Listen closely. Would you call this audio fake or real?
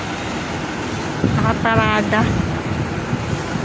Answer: real